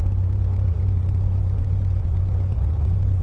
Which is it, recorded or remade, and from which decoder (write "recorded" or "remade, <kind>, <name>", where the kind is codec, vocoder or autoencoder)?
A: remade, vocoder, Vocos